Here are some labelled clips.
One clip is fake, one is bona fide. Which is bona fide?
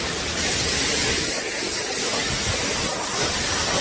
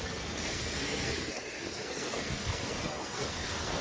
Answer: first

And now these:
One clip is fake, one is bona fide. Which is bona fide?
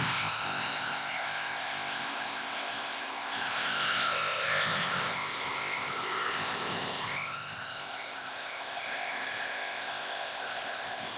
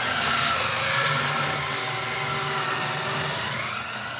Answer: second